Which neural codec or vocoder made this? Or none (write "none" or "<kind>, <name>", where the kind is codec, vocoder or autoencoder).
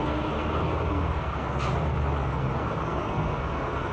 codec, SNAC